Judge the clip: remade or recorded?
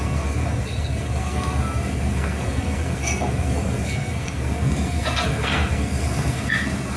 remade